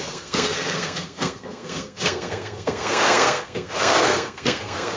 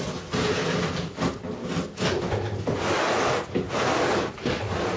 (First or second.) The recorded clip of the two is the second